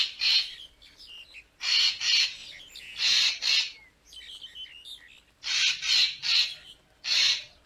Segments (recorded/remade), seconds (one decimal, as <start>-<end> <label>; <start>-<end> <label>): 0.0-7.7 recorded

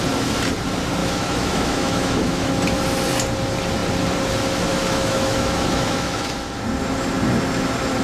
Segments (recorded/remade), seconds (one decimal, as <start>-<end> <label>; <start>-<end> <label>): 0.0-1.0 recorded; 1.0-2.5 remade; 2.5-4.7 recorded; 4.7-6.3 remade; 6.3-8.0 recorded

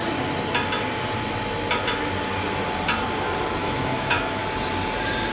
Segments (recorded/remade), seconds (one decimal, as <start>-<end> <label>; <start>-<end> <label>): 0.0-3.6 recorded; 3.6-4.4 remade; 4.4-5.3 recorded

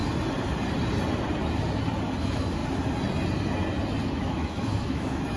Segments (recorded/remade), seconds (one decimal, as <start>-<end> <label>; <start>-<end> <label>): 0.0-2.2 recorded; 2.2-2.6 remade; 2.6-4.1 recorded; 4.1-5.4 remade

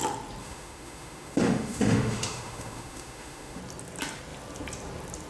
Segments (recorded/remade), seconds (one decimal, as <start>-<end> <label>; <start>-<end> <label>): 0.0-0.4 recorded; 0.4-3.6 remade; 3.6-5.3 recorded

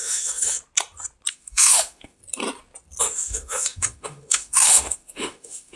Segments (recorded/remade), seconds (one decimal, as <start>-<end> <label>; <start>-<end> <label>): 0.0-0.6 remade; 0.6-1.3 recorded; 1.3-2.2 remade; 2.2-3.0 recorded; 3.0-5.8 remade

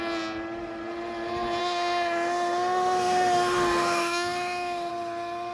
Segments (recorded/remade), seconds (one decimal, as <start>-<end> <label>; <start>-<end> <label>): 0.0-1.6 recorded; 1.6-4.9 remade; 4.9-5.5 recorded

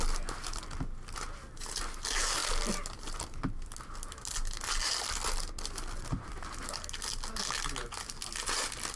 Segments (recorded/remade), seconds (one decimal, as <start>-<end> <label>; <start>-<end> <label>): 0.0-9.0 recorded